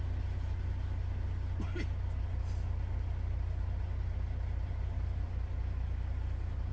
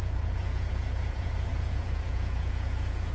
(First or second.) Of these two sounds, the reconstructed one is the second